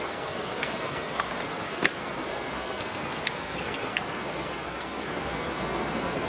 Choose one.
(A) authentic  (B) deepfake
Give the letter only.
B